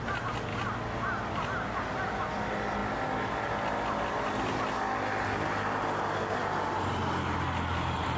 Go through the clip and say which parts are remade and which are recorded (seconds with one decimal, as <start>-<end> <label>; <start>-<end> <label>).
0.0-8.2 recorded